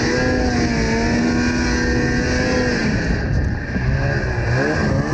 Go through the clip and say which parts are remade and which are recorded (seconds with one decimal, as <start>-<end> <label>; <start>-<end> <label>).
0.0-5.1 recorded